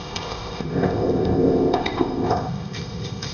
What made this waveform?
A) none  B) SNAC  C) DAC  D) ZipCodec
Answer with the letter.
D